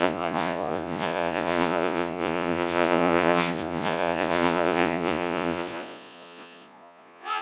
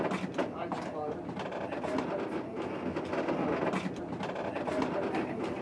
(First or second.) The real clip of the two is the second